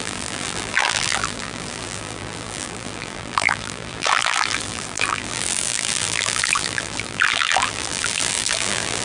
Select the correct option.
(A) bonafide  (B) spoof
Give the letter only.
B